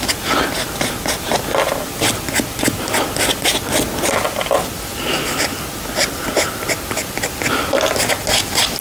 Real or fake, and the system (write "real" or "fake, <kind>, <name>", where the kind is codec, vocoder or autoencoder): real